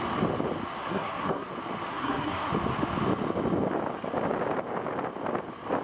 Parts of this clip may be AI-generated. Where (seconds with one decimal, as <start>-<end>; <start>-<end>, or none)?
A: 0.8-1.5; 1.9-2.5